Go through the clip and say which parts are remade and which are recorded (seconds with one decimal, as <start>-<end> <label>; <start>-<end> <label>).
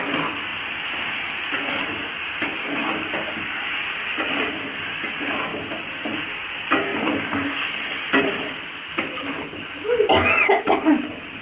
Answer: 0.0-11.4 recorded